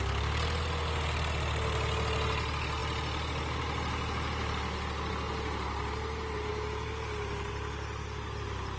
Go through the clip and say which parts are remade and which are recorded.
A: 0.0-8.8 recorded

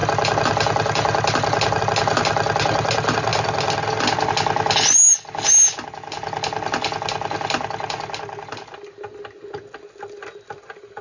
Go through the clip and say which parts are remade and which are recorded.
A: 0.0-11.0 recorded